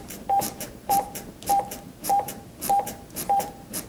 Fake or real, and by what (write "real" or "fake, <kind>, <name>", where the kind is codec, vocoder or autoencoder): fake, vocoder, BigVGAN v2